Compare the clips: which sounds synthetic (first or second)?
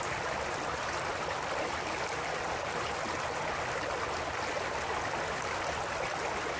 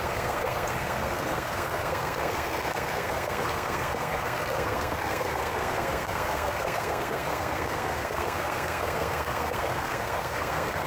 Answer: second